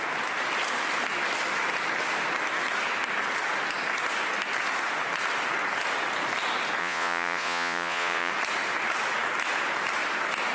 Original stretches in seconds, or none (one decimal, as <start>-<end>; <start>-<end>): 0.0-6.8; 8.3-10.5